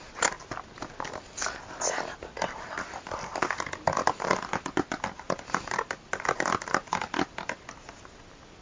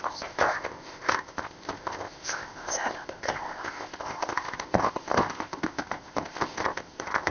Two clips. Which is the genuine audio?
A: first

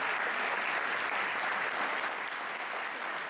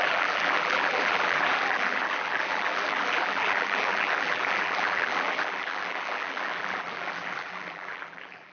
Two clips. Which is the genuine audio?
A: first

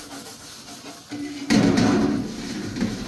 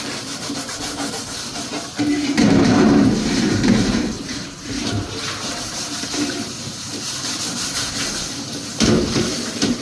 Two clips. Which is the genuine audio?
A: first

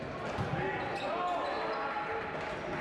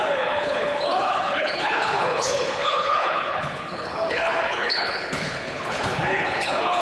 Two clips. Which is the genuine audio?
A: first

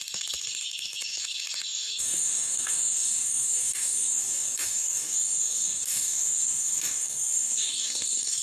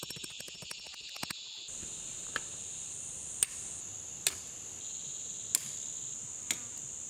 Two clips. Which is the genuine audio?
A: second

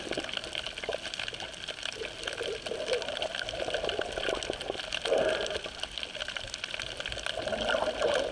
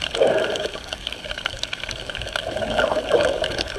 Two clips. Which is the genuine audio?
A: first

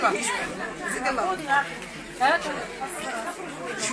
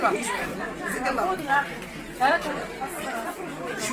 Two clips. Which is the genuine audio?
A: first